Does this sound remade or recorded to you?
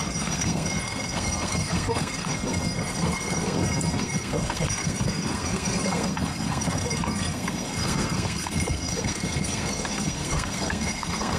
remade